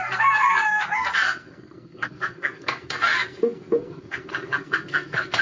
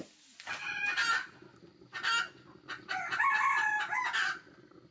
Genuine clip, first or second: second